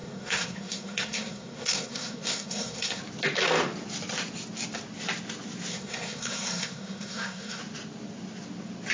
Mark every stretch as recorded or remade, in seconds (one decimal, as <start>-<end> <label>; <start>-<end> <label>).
0.0-3.0 remade; 3.0-5.7 recorded; 5.7-7.6 remade; 7.6-8.9 recorded

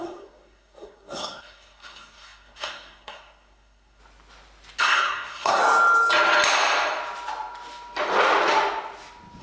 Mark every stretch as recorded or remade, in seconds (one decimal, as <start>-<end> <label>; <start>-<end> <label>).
0.0-4.0 remade; 4.0-4.8 recorded; 4.8-5.6 remade; 5.6-9.4 recorded

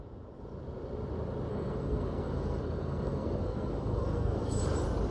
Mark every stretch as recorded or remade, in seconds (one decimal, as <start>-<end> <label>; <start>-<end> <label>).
0.0-1.5 recorded; 1.5-4.6 remade; 4.6-5.1 recorded

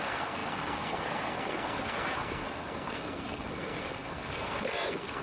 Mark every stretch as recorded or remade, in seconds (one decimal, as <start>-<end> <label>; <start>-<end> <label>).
0.0-5.2 remade

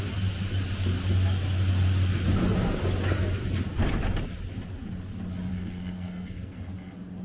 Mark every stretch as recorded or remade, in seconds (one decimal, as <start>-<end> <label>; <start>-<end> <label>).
0.0-5.5 recorded; 5.5-6.6 remade; 6.6-7.2 recorded

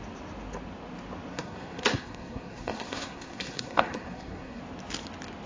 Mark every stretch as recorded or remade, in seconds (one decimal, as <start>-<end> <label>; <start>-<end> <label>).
0.0-1.3 recorded; 1.3-4.6 remade; 4.6-5.5 recorded